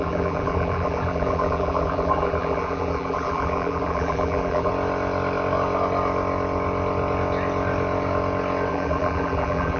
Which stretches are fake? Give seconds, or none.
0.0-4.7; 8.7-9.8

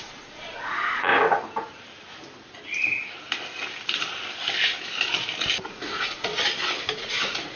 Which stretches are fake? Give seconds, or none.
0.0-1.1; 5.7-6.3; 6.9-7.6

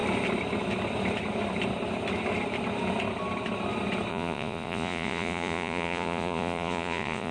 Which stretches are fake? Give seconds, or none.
4.1-7.3

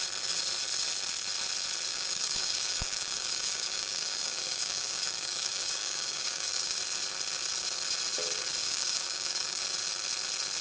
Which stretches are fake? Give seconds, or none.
1.9-6.8; 8.6-9.6